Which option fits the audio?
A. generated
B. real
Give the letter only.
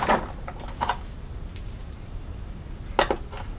B